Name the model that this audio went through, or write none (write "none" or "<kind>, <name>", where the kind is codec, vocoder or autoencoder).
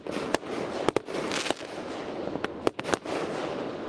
none